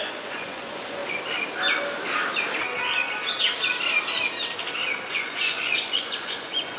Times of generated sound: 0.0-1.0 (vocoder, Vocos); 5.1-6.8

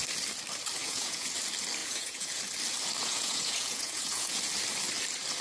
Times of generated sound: 0.8-1.3 (vocoder, Vocos); 1.8-2.4; 3.0-4.4

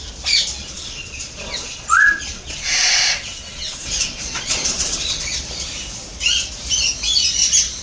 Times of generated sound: 0.6-5.3 (vocoder, Vocos)

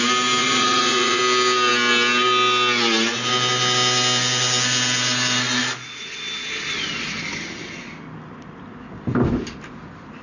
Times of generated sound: 0.4-1.2 (vocoder, Vocos)

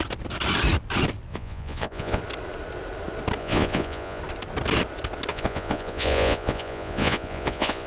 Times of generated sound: 1.3-2.2 (vocoder, Vocos); 3.4-4.2; 5.3-7.9

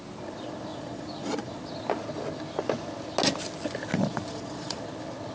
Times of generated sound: 0.7-1.6 (vocoder, Vocos); 3.9-4.8